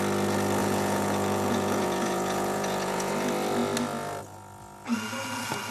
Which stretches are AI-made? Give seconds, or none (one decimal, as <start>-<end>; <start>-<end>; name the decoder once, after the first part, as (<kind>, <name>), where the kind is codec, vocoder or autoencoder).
0.6-3.1 (vocoder, Vocos)